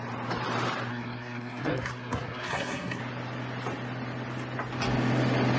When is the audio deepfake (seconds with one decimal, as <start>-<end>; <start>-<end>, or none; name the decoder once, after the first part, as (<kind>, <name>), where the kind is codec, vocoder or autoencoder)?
0.9-3.0 (codec, SNAC)